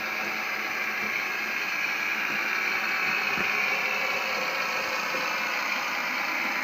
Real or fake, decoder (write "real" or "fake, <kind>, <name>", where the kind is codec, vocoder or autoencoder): real